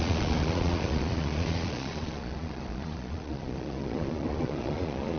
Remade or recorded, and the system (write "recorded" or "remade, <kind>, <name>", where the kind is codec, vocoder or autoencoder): remade, vocoder, Vocos